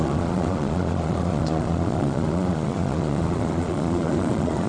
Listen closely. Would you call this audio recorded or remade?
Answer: remade